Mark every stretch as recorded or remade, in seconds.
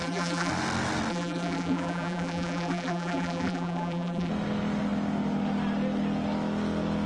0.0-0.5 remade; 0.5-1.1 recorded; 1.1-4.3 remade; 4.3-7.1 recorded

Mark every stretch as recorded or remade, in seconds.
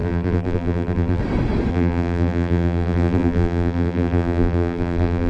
0.0-1.2 remade; 1.2-1.7 recorded; 1.7-5.3 remade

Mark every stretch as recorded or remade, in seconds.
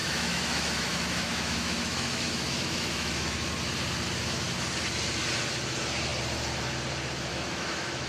0.0-3.5 remade; 3.5-7.3 recorded; 7.3-8.1 remade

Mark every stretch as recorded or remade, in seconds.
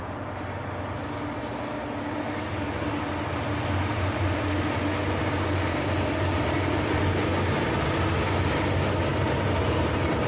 0.0-9.1 recorded; 9.1-9.8 remade; 9.8-10.3 recorded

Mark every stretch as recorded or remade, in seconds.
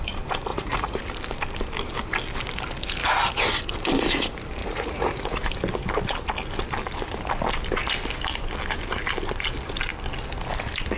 0.0-0.5 recorded; 0.5-1.0 remade; 1.0-4.6 recorded; 4.6-5.5 remade; 5.5-11.0 recorded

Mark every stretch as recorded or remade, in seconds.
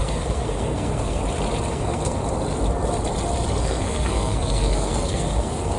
0.0-1.2 remade; 1.2-1.7 recorded; 1.7-2.2 remade; 2.2-3.6 recorded; 3.6-5.8 remade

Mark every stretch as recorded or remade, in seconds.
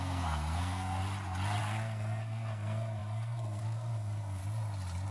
0.0-1.0 remade; 1.0-1.6 recorded; 1.6-4.4 remade; 4.4-5.1 recorded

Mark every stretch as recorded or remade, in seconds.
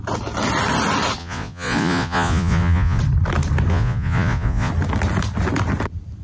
0.0-1.2 recorded; 1.2-3.0 remade; 3.0-3.7 recorded; 3.7-4.7 remade; 4.7-6.2 recorded